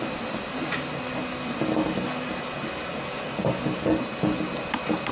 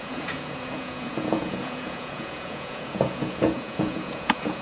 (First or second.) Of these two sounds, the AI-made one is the second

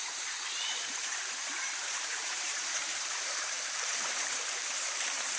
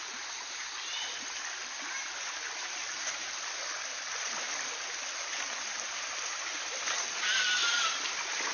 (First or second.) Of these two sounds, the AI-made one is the first